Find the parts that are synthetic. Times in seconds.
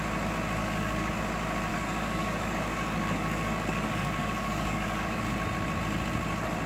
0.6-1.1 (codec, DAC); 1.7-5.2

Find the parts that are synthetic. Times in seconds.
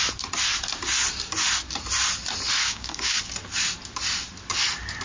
2.6-3.2 (codec, DAC)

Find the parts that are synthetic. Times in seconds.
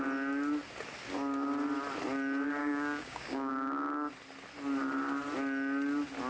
2.6-3.5 (codec, DAC)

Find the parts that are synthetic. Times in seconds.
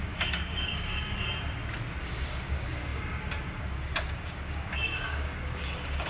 0.0-1.3 (codec, DAC); 2.0-6.1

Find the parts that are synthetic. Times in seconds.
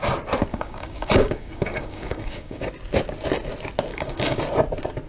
0.5-2.7 (codec, DAC); 3.9-4.4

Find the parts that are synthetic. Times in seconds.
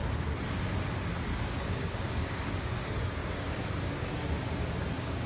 1.3-5.3 (codec, DAC)